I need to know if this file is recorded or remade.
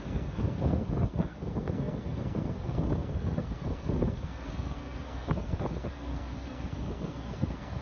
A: remade